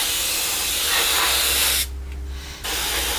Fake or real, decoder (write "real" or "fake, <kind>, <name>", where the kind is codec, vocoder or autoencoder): real